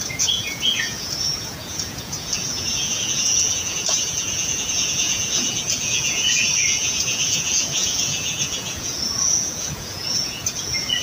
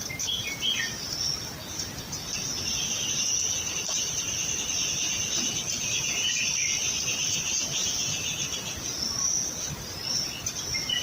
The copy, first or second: first